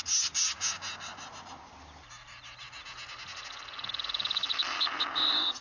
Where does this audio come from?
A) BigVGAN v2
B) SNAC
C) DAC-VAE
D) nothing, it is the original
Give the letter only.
D